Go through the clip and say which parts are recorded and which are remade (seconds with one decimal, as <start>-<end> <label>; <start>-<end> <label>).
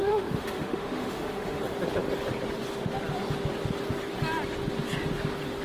0.0-1.6 remade; 1.6-5.6 recorded